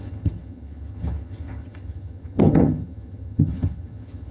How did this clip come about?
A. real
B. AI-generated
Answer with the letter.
B